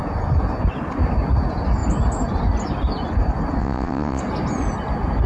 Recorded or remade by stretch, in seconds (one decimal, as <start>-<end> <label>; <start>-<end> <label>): 0.0-3.6 recorded; 3.6-4.2 remade; 4.2-5.3 recorded